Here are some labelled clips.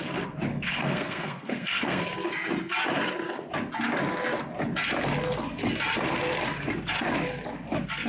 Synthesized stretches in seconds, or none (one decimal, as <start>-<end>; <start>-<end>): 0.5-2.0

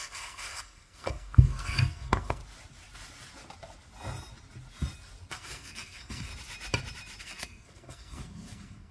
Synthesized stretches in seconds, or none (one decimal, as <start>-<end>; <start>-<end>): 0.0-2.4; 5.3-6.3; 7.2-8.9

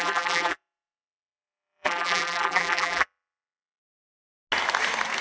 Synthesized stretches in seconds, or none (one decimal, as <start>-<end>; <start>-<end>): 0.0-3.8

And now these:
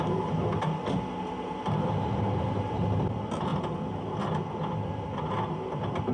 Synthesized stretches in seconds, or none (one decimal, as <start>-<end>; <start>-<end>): none

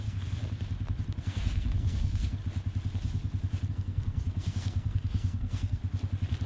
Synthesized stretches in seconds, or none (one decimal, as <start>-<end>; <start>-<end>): 0.0-0.4; 1.2-2.4; 3.7-5.8